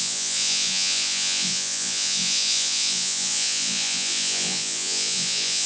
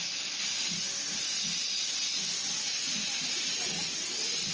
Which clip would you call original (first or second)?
second